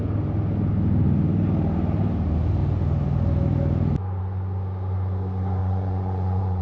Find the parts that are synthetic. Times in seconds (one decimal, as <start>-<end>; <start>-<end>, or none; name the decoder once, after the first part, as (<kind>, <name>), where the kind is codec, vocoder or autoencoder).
5.6-6.6 (vocoder, Vocos)